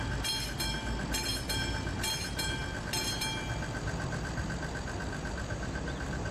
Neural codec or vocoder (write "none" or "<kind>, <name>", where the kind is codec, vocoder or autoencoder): none